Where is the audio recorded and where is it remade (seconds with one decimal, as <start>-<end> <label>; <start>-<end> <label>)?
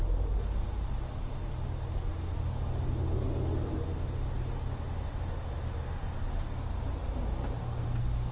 0.0-7.6 recorded; 7.6-8.3 remade